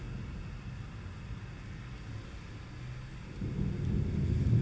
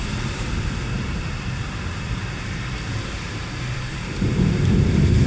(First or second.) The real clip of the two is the first